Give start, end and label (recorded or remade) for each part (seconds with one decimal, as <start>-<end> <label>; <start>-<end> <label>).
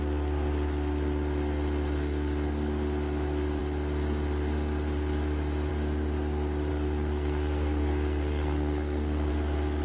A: 0.0-6.7 recorded; 6.7-9.3 remade; 9.3-9.8 recorded